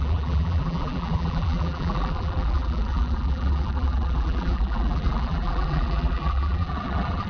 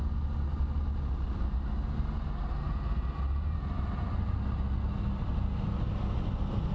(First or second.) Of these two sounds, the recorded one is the second